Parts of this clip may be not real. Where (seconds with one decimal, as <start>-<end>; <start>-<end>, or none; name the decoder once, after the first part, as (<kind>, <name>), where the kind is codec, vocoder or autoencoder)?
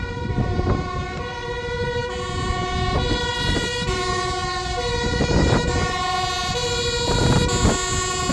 none